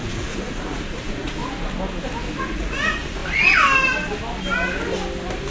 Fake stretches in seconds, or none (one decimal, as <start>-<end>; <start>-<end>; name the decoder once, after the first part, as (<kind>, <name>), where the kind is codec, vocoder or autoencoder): 0.0-1.4 (vocoder, Vocos); 2.4-3.2